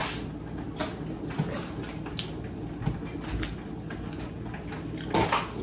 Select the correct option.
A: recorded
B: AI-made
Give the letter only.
A